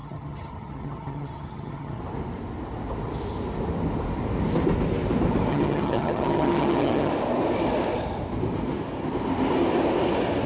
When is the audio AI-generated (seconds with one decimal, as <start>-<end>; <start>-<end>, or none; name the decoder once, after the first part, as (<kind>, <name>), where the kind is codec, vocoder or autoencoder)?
0.0-2.0 (vocoder, HiFi-GAN); 5.5-7.1